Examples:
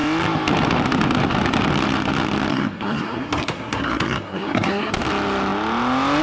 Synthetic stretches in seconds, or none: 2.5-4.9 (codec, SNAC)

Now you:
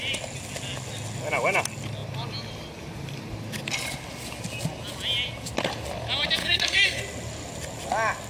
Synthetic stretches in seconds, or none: 6.4-7.0 (codec, SNAC)

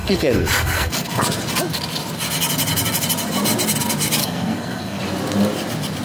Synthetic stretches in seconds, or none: 0.0-1.2 (codec, SNAC); 4.2-5.0

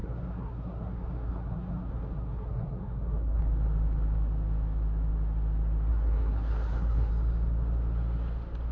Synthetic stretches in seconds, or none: 0.0-3.4 (codec, SNAC); 5.9-7.1

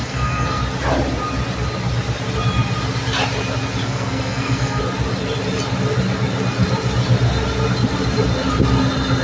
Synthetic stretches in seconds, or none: 0.0-0.6 (codec, SNAC); 3.8-4.8